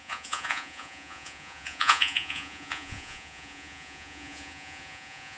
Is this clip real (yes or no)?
no